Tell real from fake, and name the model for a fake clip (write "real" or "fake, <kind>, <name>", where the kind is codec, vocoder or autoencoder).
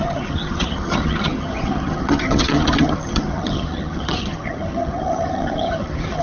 fake, vocoder, HiFi-GAN